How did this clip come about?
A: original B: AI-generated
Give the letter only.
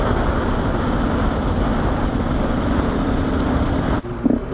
A